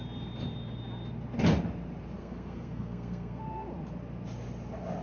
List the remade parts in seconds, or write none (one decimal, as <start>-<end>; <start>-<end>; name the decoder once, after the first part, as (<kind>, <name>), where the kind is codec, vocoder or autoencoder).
2.2-3.4 (codec, SNAC)